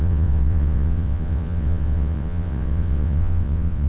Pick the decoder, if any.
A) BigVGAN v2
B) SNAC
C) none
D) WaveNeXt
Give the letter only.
D